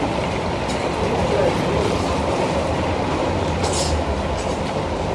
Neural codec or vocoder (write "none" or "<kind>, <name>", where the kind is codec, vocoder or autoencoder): none